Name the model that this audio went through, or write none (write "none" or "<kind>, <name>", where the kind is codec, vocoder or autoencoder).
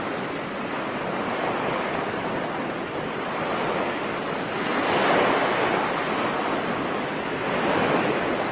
none